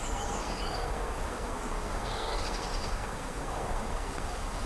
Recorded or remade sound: remade